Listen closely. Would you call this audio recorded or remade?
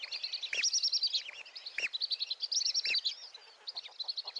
recorded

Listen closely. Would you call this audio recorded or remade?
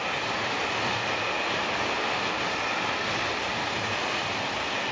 recorded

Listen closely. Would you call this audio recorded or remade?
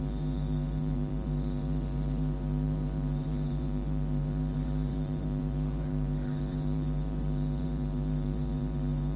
remade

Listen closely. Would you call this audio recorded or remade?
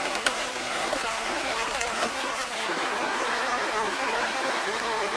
remade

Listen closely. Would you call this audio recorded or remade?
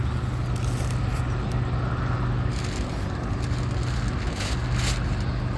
recorded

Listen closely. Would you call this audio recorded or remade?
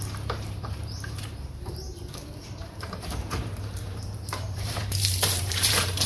remade